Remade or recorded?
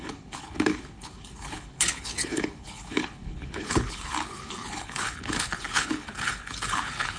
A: remade